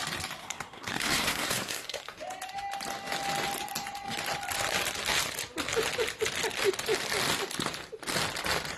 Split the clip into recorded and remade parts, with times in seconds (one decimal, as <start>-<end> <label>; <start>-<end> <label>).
0.0-0.4 recorded; 0.4-2.2 remade; 2.2-8.8 recorded